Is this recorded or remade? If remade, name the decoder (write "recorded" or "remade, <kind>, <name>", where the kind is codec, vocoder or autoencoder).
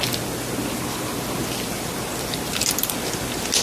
recorded